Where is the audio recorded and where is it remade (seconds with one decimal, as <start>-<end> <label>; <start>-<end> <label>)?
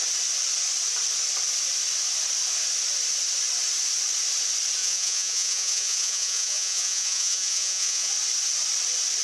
0.0-4.8 recorded; 4.8-8.1 remade; 8.1-9.2 recorded